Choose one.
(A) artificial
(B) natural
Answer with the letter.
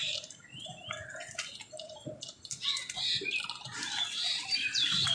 B